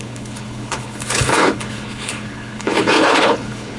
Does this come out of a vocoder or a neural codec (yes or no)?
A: yes